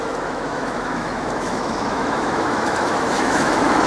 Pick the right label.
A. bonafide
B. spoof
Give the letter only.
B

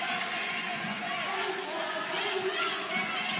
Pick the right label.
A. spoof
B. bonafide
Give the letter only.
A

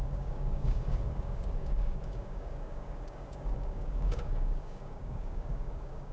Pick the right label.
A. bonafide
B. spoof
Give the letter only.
B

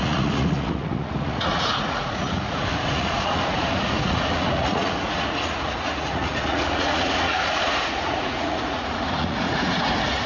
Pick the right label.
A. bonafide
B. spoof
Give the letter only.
B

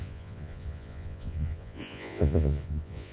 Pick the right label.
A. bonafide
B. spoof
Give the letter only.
B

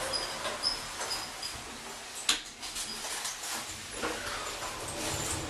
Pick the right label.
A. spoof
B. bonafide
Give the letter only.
B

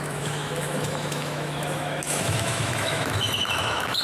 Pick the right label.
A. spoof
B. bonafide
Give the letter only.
A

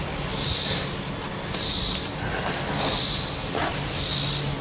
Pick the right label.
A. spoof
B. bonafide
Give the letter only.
B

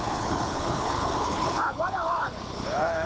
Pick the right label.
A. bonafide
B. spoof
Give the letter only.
B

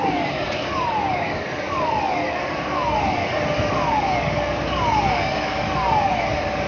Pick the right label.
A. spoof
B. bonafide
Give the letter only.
A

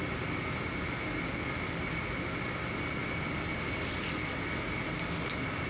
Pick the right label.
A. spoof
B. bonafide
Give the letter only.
B